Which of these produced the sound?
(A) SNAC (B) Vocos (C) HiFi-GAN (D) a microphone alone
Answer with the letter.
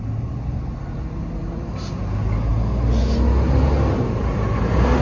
D